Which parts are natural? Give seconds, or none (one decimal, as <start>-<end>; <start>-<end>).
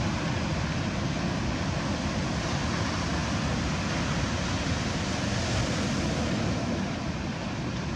0.0-8.0